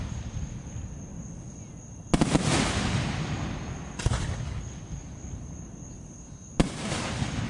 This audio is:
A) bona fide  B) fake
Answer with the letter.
A